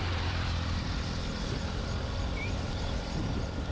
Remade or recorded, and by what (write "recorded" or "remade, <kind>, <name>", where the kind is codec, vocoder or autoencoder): remade, vocoder, BigVGAN v2